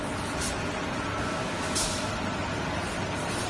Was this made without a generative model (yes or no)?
yes